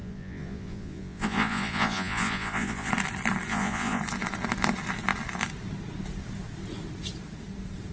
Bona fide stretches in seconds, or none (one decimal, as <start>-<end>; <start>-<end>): 2.9-3.5; 4.0-7.9